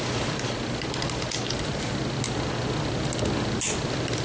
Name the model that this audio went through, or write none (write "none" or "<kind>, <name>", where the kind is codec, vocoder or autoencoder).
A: none